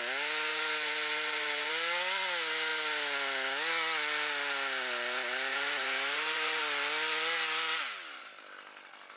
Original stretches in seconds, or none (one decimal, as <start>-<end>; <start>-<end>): 0.0-0.5; 1.7-5.5; 6.6-9.2